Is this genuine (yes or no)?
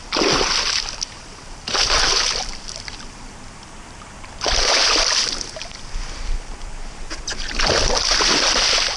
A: yes